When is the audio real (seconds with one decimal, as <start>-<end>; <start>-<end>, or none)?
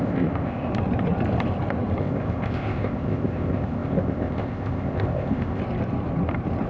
0.7-2.0; 5.6-6.7